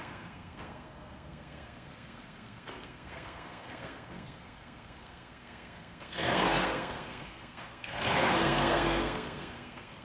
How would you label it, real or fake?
fake